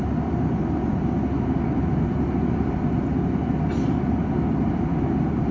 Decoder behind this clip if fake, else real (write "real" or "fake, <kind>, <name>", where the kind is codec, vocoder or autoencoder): real